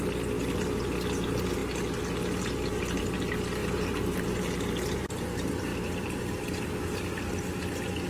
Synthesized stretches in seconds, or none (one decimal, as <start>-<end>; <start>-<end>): 3.6-5.1